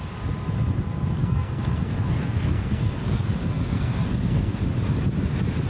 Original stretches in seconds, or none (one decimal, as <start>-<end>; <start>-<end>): 0.0-1.2; 4.6-5.7